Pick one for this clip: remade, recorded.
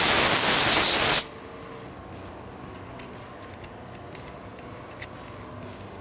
recorded